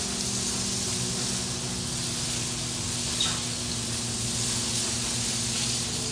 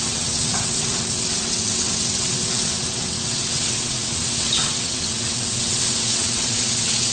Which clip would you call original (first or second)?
first